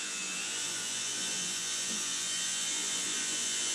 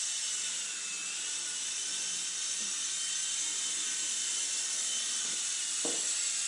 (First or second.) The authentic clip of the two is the second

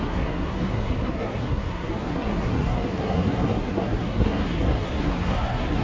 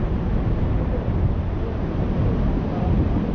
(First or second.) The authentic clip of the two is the second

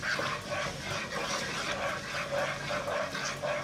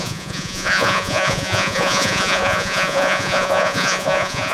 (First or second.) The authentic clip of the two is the first